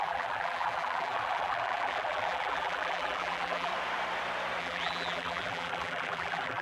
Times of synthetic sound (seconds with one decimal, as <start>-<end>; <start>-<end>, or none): 0.0-3.7; 4.6-6.6